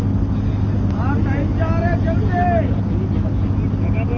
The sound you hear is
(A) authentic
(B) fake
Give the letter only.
A